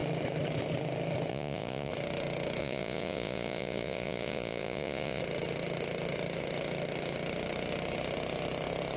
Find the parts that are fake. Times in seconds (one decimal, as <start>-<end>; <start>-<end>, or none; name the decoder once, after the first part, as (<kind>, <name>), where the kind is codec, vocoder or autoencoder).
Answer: 1.3-1.9 (vocoder, Vocos); 2.6-5.2